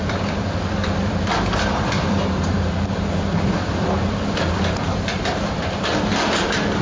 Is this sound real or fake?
fake